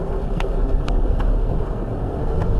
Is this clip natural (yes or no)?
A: no